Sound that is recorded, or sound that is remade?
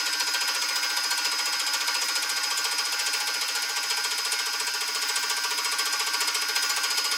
recorded